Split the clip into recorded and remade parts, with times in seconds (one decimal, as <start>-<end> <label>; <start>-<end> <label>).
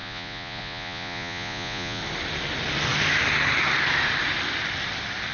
0.0-2.0 remade; 2.0-5.3 recorded